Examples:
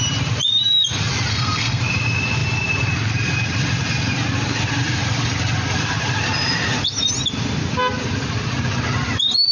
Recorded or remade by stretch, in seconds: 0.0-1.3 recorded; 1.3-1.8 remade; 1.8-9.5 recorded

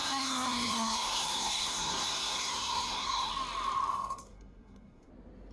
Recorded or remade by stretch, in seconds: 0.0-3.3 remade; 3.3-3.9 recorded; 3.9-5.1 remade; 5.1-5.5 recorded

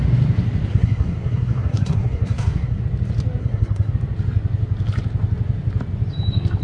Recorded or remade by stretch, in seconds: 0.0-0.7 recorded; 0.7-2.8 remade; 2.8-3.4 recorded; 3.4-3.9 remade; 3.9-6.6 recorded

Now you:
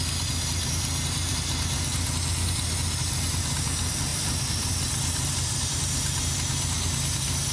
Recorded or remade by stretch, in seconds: 0.0-7.5 recorded

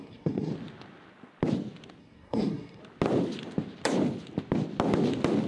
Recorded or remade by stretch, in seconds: 0.0-0.5 remade; 0.5-2.0 recorded; 2.0-2.8 remade; 2.8-5.5 recorded

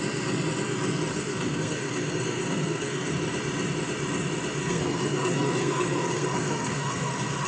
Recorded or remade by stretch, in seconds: 0.0-1.1 recorded; 1.1-3.1 remade; 3.1-4.6 recorded; 4.6-7.1 remade; 7.1-7.5 recorded

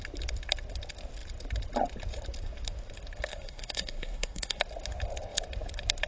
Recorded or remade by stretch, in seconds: 0.0-3.3 recorded; 3.3-4.6 remade; 4.6-6.1 recorded